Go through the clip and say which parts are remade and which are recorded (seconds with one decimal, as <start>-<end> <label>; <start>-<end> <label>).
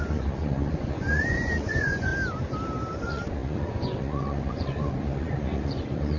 0.0-2.1 remade; 2.1-3.0 recorded; 3.0-6.2 remade